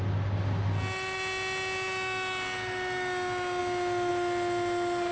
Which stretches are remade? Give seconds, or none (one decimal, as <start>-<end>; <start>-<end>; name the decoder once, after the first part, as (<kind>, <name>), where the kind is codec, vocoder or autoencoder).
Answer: none

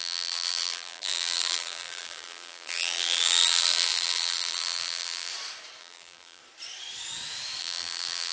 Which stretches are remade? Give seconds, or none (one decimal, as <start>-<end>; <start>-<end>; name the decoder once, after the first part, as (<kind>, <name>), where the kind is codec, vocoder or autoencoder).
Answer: 0.0-5.3 (vocoder, BigVGAN v2); 5.8-6.4; 7.6-8.3

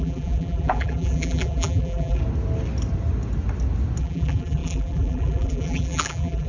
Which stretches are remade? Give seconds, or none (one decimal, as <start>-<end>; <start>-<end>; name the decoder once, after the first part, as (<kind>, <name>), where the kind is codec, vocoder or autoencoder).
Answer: 0.0-2.2 (vocoder, BigVGAN v2); 4.0-6.5